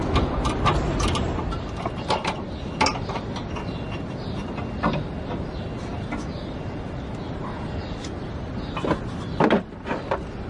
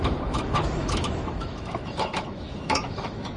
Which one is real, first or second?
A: first